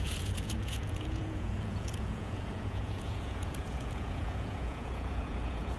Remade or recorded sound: remade